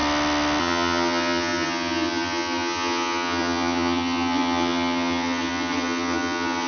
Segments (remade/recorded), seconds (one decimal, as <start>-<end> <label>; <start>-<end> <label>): 0.0-0.6 recorded; 0.6-6.7 remade